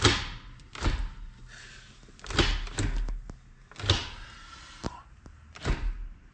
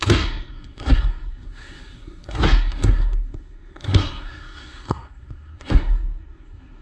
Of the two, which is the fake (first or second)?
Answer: second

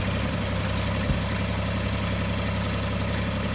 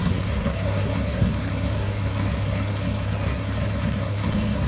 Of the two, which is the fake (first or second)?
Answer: second